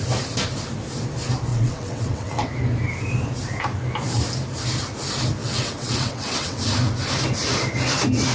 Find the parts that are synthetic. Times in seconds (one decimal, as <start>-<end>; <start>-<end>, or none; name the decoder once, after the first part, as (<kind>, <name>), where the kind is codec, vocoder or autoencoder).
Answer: 1.5-2.5 (vocoder, WaveNeXt); 5.4-6.6